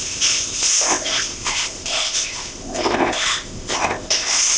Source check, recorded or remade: remade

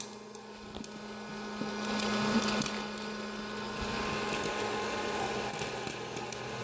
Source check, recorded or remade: recorded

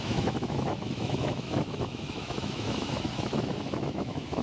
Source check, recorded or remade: remade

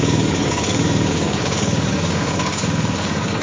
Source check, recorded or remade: remade